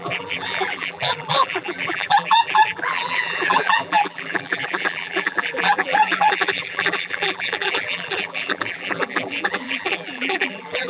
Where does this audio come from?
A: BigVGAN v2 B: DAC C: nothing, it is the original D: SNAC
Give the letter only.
A